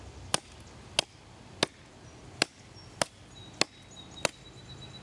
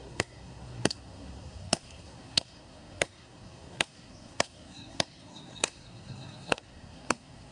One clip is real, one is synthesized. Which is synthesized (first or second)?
second